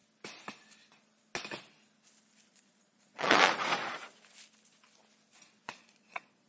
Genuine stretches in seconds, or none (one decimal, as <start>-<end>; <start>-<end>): 0.0-2.5; 3.5-5.6